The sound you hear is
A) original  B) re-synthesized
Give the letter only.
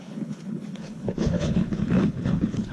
B